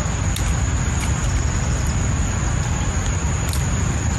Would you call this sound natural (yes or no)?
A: yes